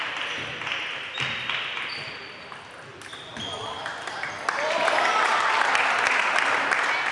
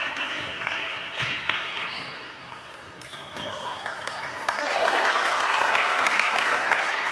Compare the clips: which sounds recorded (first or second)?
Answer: first